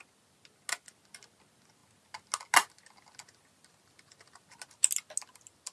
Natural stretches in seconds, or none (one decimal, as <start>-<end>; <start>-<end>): 0.0-5.7